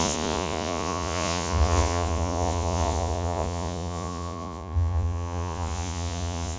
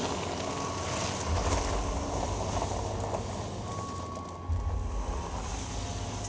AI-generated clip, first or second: first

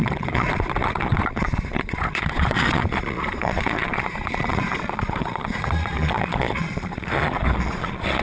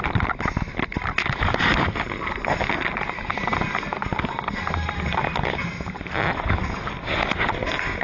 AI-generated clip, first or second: first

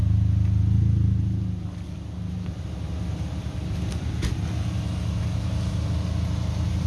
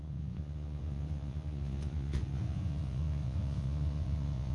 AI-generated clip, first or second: second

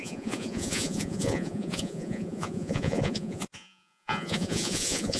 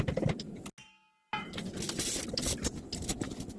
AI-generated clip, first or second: first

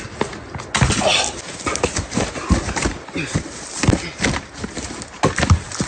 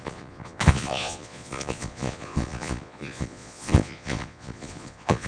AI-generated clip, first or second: second